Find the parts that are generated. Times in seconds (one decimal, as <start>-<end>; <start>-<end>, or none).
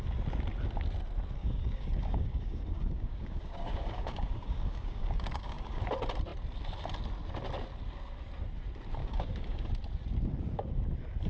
1.4-5.8; 9.0-9.6